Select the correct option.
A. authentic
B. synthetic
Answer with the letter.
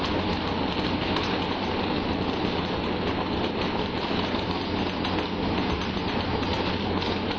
A